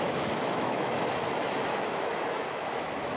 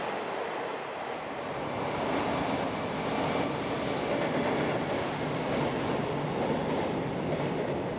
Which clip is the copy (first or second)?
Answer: first